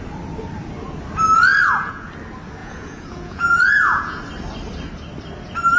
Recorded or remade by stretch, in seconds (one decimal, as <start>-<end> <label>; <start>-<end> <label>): 0.0-1.5 recorded; 1.5-2.1 remade; 2.1-2.6 recorded; 2.6-4.2 remade; 4.2-5.8 recorded